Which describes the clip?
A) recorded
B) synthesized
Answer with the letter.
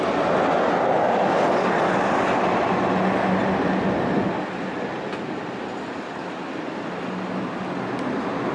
A